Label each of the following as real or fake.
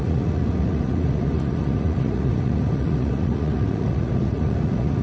fake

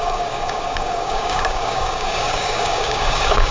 fake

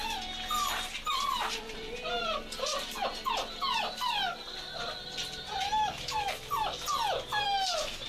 real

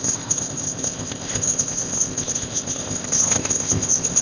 fake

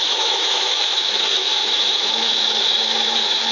fake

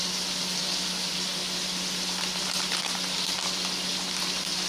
real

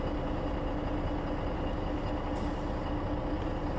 real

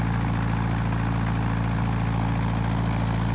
real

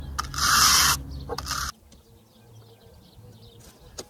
real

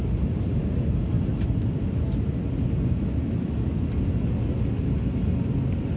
real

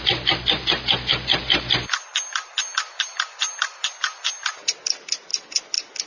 real